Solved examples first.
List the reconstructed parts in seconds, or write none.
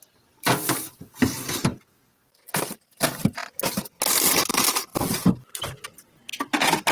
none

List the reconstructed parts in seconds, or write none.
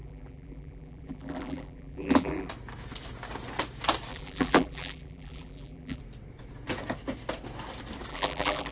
0.0-2.5; 4.1-6.0; 8.1-8.7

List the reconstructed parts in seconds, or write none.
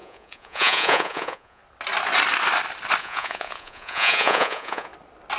0.0-1.6; 3.0-4.9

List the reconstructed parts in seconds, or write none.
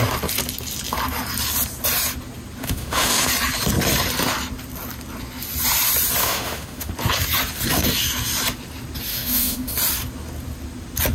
2.6-3.3; 6.2-6.9; 9.1-9.7